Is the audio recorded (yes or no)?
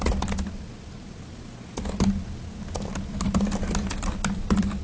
yes